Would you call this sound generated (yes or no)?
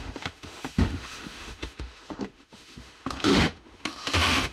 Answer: yes